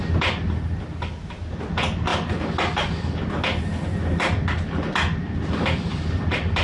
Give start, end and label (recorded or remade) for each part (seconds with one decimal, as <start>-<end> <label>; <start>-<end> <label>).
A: 0.0-6.6 recorded